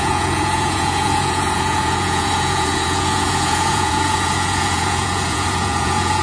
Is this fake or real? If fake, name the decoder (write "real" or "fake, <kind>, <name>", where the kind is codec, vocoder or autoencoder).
fake, vocoder, Vocos